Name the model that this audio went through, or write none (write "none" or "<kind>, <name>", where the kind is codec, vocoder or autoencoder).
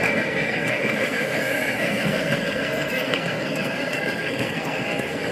codec, SNAC